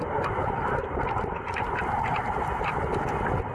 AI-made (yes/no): no